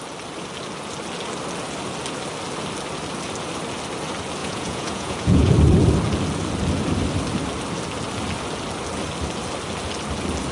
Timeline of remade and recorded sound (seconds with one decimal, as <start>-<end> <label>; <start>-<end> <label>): 0.0-4.4 recorded; 4.4-5.5 remade; 5.5-10.5 recorded

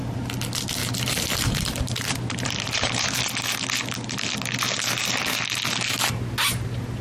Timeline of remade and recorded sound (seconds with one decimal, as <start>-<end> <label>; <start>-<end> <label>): 0.0-0.8 recorded; 0.8-3.2 remade; 3.2-7.0 recorded

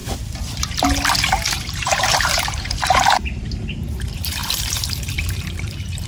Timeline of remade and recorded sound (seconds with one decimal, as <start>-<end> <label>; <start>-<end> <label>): 0.0-1.5 recorded; 1.5-6.1 remade

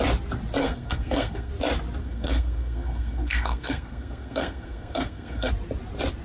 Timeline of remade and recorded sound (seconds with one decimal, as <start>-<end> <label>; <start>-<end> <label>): 0.0-0.6 recorded; 0.6-1.5 remade; 1.5-2.0 recorded; 2.0-5.5 remade; 5.5-6.2 recorded

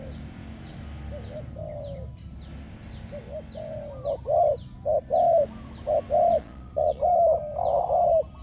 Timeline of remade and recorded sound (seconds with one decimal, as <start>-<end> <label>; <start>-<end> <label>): 0.0-6.3 recorded; 6.3-7.0 remade; 7.0-8.4 recorded